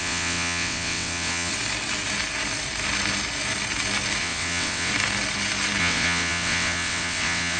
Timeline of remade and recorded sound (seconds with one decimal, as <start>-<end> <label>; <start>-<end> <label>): 0.0-1.5 remade; 1.5-4.2 recorded; 4.2-4.9 remade; 4.9-5.8 recorded; 5.8-7.6 remade